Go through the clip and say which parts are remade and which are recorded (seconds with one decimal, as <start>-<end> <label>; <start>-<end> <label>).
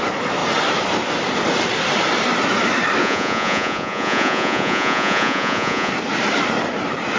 0.0-3.0 recorded; 3.0-5.9 remade; 5.9-7.2 recorded